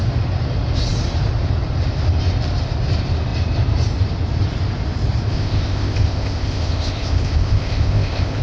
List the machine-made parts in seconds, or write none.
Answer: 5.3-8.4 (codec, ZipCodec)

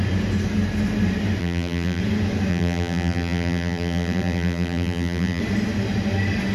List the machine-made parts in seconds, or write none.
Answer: 1.4-2.0 (vocoder, BigVGAN v2); 2.5-5.4

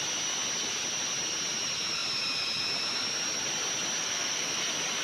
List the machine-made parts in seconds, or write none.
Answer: 4.0-4.6 (codec, SNAC)

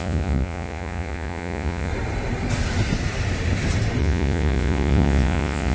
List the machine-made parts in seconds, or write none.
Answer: 0.0-1.9 (vocoder, Vocos); 4.0-5.7